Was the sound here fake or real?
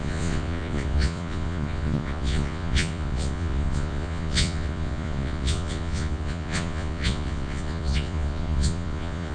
fake